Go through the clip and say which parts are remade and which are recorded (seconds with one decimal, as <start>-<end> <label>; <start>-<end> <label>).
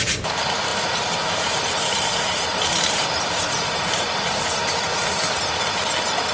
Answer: 0.0-0.7 recorded; 0.7-1.5 remade; 1.5-2.1 recorded; 2.1-5.4 remade; 5.4-6.3 recorded